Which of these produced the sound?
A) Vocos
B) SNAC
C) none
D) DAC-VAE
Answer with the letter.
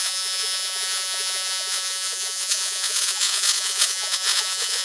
A